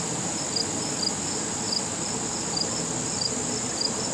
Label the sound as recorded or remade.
recorded